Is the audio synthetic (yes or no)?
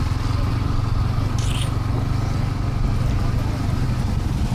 no